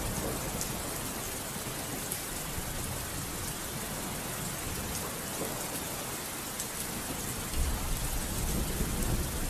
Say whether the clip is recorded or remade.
recorded